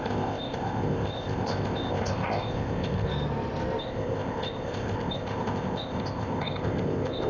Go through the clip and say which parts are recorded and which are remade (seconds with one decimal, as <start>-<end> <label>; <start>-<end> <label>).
0.0-3.1 remade; 3.1-3.8 recorded; 3.8-7.3 remade